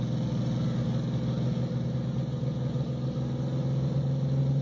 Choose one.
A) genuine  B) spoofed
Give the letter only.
A